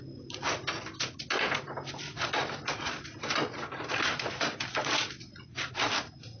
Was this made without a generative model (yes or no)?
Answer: yes